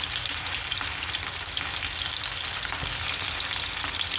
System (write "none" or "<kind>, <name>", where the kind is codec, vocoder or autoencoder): none